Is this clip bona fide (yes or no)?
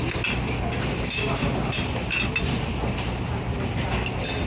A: yes